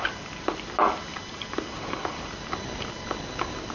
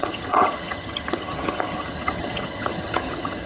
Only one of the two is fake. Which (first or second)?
second